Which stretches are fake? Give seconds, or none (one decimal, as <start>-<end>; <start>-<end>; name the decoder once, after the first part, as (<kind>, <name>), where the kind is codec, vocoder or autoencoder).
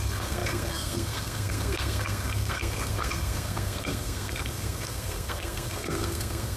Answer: 0.0-6.6 (codec, SNAC)